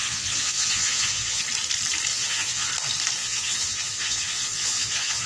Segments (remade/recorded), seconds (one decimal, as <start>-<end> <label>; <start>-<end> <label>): 0.0-1.4 remade; 1.4-2.1 recorded; 2.1-2.7 remade; 2.7-3.2 recorded; 3.2-5.3 remade